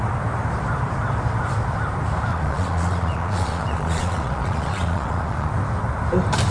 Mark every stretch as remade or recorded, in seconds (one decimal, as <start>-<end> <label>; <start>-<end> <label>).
0.0-2.3 recorded; 2.3-5.5 remade; 5.5-6.5 recorded